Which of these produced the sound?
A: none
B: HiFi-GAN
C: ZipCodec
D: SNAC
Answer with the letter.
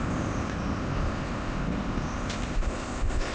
C